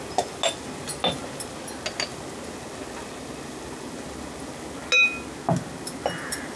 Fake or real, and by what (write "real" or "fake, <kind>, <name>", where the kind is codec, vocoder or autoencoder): real